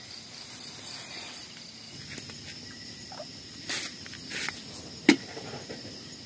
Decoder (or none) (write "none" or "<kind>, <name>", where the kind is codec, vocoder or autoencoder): none